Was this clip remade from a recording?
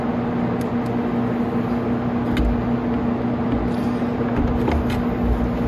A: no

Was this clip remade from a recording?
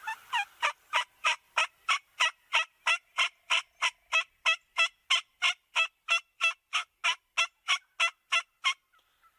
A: no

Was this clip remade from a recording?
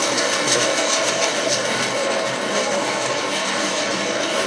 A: yes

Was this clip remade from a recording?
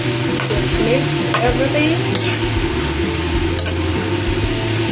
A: no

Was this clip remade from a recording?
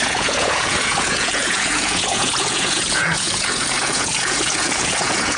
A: yes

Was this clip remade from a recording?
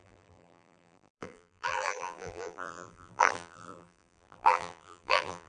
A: yes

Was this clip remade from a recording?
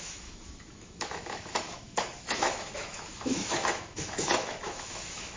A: yes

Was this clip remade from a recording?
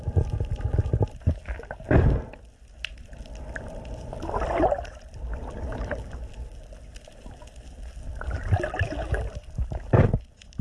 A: no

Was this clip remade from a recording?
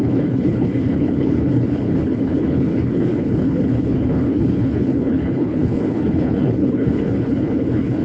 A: yes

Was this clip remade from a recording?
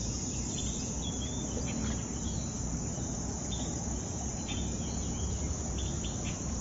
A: yes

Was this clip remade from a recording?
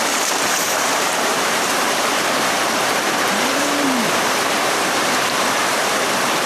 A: yes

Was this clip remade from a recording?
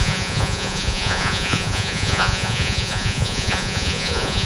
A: yes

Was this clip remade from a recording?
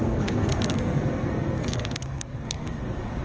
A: yes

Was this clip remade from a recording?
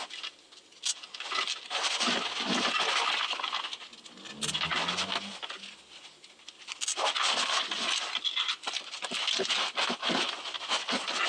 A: no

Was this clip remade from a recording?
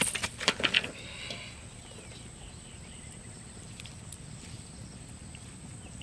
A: no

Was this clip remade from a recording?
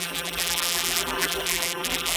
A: yes